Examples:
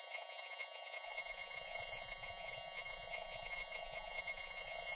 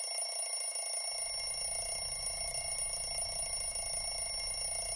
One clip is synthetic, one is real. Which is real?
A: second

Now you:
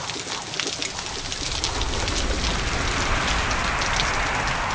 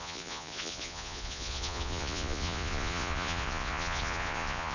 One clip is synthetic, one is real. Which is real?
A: first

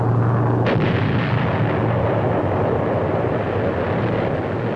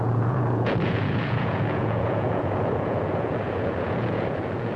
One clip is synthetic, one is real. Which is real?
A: first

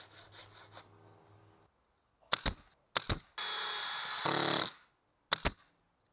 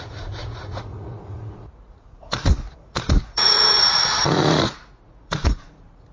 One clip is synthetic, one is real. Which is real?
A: first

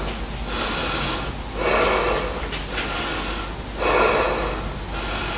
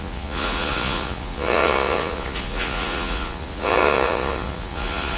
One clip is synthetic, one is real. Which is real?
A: first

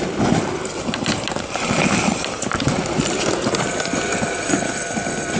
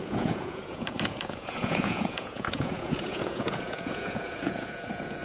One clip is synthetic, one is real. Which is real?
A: first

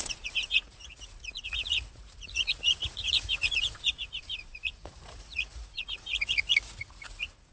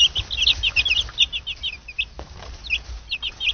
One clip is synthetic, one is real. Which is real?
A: second